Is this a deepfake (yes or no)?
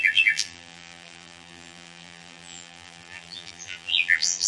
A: yes